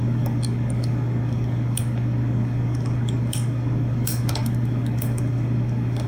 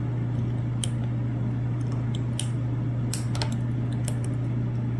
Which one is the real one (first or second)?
second